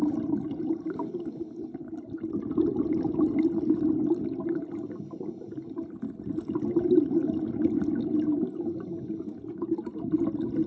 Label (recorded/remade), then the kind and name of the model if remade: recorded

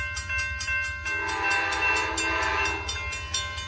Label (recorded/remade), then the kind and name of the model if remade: recorded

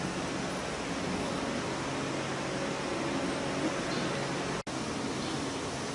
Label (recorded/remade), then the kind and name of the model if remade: recorded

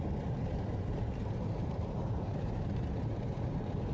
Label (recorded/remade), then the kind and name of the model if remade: remade, vocoder, BigVGAN v2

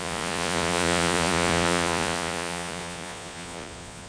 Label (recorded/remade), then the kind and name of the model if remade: remade, vocoder, Vocos